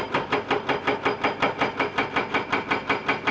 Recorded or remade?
recorded